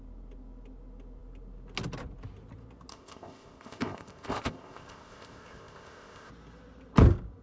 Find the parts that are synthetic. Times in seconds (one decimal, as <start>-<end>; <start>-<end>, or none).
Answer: 2.9-6.3